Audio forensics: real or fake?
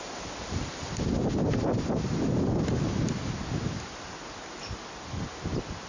real